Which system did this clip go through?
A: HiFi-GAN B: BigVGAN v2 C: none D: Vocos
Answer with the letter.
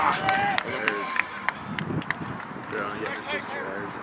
B